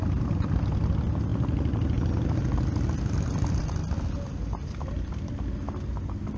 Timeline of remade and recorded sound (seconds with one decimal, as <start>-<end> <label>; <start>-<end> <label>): 0.0-6.4 recorded